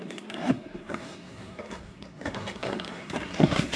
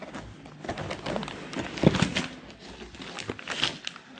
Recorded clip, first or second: second